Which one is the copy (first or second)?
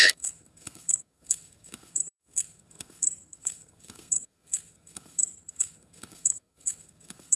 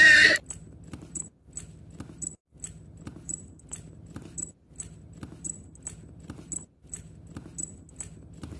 first